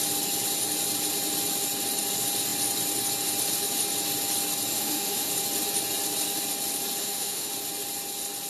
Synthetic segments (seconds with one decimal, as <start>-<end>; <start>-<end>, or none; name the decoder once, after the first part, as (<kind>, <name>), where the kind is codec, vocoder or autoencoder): 4.7-5.3 (autoencoder, DAC-VAE); 7.0-7.5